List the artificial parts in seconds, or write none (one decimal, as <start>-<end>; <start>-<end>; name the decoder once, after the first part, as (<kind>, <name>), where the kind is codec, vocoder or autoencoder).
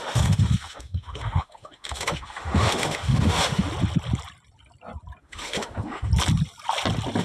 0.0-3.6 (autoencoder, DAC-VAE); 5.2-6.1